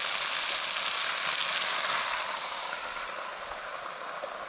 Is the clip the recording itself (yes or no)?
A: yes